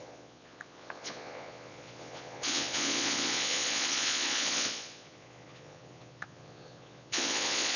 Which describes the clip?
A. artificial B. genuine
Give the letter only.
A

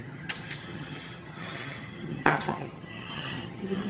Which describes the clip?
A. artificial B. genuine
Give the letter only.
A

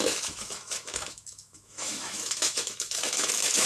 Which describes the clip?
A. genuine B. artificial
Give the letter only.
B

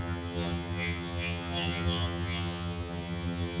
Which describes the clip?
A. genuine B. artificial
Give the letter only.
B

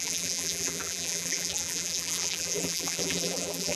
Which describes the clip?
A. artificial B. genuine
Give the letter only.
A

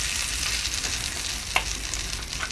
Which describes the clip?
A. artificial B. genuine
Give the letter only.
B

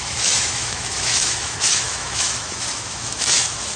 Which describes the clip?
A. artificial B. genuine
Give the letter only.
A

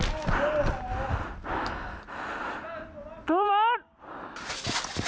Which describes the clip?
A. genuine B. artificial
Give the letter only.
A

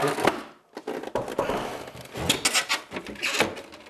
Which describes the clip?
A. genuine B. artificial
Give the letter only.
A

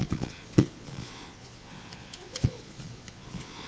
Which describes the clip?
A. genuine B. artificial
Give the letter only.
B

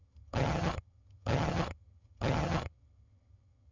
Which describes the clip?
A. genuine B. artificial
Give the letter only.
B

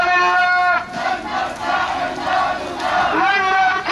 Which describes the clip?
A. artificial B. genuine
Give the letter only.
B